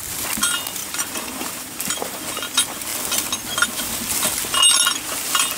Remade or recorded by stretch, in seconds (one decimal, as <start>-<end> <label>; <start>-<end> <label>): 0.0-0.8 recorded; 0.8-2.2 remade; 2.2-5.6 recorded